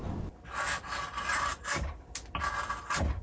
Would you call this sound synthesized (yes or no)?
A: no